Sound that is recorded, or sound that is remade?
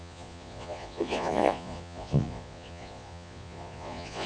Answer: remade